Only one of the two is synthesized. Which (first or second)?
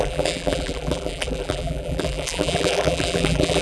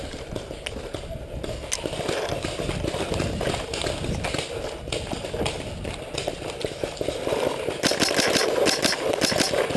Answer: first